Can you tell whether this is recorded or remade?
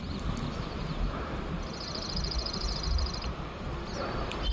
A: recorded